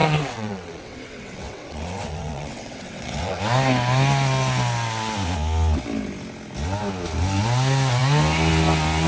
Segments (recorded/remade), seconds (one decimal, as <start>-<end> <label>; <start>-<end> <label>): 0.0-3.4 remade; 3.4-9.1 recorded